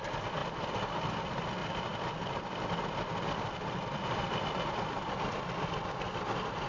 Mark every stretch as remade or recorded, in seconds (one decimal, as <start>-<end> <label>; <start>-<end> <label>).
0.0-1.6 remade; 1.6-3.3 recorded; 3.3-6.7 remade